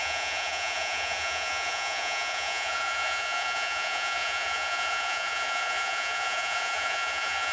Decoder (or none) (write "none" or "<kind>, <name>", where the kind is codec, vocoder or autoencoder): vocoder, Vocos